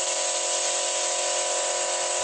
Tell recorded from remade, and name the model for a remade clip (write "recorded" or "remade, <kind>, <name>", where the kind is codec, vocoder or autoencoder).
recorded